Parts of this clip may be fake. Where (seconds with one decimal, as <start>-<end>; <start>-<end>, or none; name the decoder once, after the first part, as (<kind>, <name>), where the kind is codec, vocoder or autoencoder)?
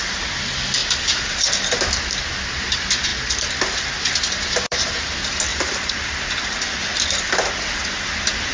0.0-0.8 (vocoder, BigVGAN v2); 2.6-3.1; 4.5-8.5